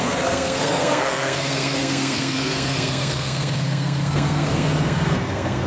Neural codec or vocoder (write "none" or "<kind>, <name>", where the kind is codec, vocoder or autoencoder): codec, SNAC